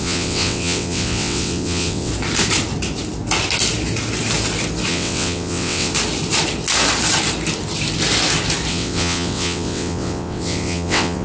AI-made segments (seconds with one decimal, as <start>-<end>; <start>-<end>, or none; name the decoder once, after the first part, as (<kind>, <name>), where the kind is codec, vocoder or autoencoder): 0.0-2.1 (vocoder, WaveNeXt); 4.9-5.9; 8.7-11.2